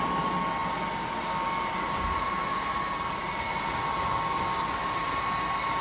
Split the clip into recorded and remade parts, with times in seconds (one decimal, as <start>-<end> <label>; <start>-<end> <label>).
0.0-5.8 recorded